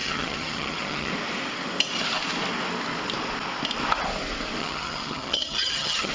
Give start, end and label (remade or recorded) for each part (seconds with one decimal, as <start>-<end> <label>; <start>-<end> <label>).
0.0-1.1 remade; 1.1-4.6 recorded; 4.6-6.1 remade